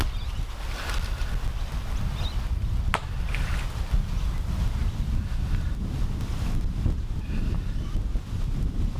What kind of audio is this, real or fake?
real